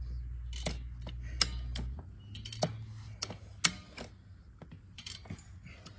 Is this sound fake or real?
real